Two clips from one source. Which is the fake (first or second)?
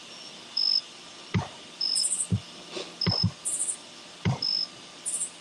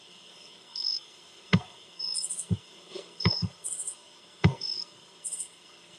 second